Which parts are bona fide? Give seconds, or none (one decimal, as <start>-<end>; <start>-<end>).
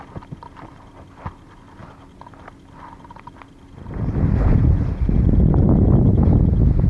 0.0-6.9